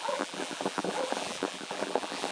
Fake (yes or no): yes